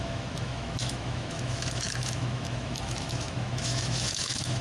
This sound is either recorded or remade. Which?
remade